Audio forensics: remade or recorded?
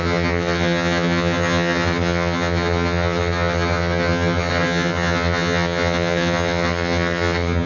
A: remade